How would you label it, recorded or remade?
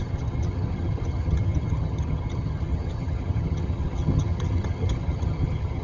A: remade